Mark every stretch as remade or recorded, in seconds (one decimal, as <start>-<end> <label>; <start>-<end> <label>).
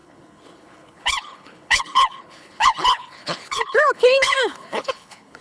0.0-5.4 remade